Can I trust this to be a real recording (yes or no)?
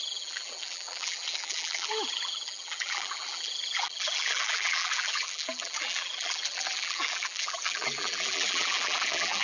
no